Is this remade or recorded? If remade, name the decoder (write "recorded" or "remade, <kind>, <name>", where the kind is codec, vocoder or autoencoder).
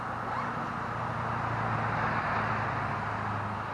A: recorded